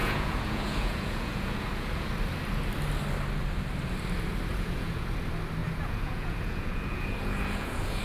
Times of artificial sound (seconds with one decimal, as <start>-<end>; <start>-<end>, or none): 0.0-2.1; 4.5-5.1; 5.6-8.0